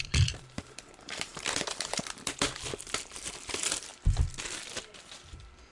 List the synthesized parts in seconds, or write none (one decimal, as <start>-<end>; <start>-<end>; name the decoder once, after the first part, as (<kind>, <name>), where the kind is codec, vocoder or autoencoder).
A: 0.0-3.9 (vocoder, BigVGAN v2); 5.1-5.7

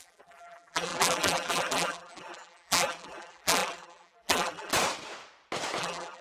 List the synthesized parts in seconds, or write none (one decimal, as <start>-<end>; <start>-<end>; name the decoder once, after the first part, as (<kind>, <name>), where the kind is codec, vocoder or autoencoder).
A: 0.0-4.7 (vocoder, BigVGAN v2); 5.8-6.2

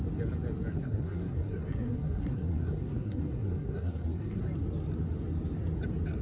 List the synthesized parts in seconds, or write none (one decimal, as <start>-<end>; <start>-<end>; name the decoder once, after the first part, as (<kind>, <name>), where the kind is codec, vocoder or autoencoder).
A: 0.7-4.4 (codec, SNAC)

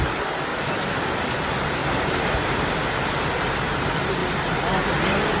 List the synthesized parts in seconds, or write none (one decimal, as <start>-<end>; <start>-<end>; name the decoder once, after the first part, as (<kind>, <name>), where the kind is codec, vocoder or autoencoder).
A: 0.0-0.5 (vocoder, BigVGAN v2); 1.3-5.4

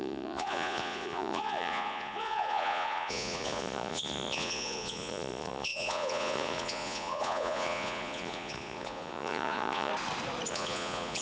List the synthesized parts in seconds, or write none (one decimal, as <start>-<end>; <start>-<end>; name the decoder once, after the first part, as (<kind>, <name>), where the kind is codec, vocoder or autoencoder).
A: 0.0-9.9 (vocoder, Vocos); 10.5-11.2

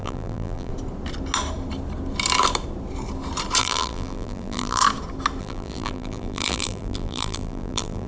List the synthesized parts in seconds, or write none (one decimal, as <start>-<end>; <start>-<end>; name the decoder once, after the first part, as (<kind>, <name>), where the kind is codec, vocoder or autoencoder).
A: 0.0-0.7 (vocoder, BigVGAN v2); 3.6-4.8; 5.4-8.1

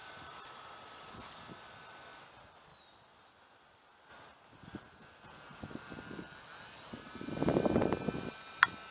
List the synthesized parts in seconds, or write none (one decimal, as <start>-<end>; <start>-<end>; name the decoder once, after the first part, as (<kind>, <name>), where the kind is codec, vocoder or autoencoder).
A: 0.0-1.1 (vocoder, BigVGAN v2); 2.7-5.2

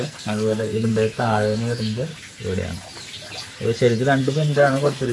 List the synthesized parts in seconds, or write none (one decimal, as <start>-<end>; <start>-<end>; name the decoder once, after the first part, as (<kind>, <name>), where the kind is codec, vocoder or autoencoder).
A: 0.0-2.1 (codec, SNAC); 4.2-5.1